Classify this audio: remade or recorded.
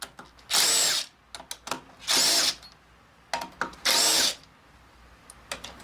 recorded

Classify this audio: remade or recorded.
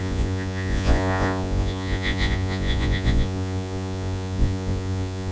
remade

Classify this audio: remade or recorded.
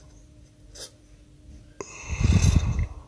recorded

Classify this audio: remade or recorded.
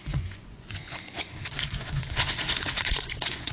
remade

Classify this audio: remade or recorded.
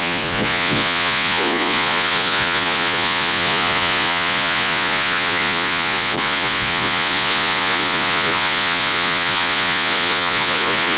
remade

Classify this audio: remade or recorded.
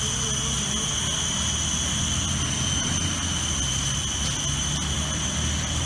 recorded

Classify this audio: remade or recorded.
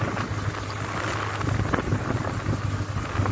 recorded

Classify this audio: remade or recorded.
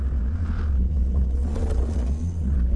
remade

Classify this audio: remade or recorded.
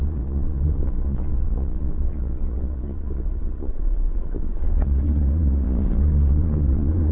remade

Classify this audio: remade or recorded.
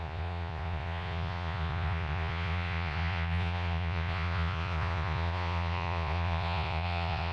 remade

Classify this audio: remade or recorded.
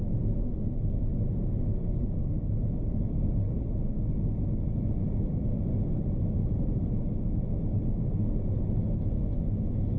recorded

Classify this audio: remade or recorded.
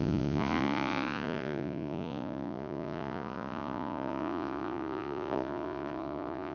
remade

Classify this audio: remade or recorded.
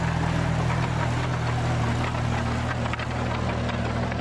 recorded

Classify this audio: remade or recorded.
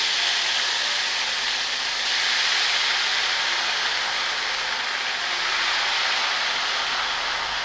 recorded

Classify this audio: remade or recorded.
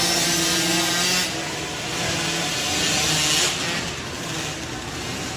recorded